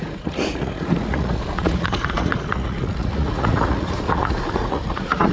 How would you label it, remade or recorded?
remade